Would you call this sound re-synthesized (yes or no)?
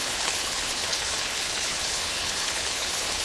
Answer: yes